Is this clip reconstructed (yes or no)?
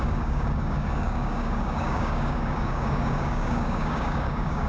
yes